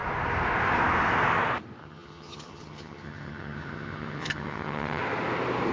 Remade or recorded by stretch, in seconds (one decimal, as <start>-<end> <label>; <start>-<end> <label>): 0.0-1.8 recorded; 1.8-5.0 remade; 5.0-5.7 recorded